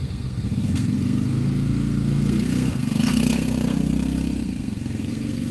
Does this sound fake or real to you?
fake